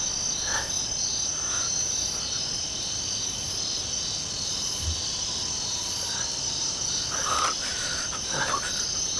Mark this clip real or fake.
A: real